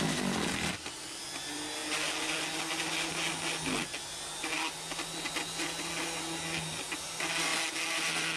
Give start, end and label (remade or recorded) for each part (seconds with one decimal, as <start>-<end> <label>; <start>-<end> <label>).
0.0-8.4 recorded